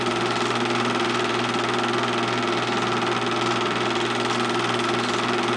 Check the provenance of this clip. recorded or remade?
recorded